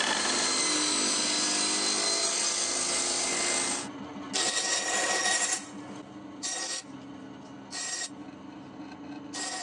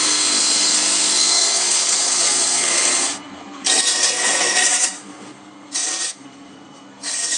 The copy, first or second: second